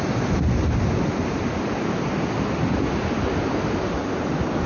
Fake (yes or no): no